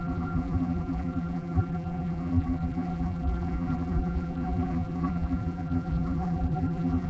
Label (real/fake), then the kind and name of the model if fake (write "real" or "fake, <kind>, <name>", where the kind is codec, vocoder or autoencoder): fake, vocoder, BigVGAN v2